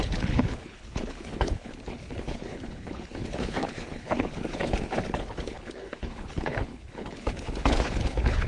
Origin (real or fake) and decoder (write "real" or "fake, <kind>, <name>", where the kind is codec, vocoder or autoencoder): fake, codec, HILCodec